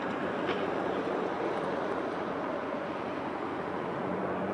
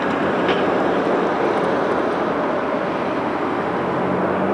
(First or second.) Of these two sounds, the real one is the second